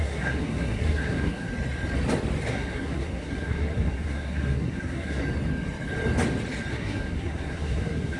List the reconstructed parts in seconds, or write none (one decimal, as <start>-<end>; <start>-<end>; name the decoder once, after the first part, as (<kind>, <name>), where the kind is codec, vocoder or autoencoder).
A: 0.0-1.5 (codec, SNAC); 2.5-5.2; 6.7-8.2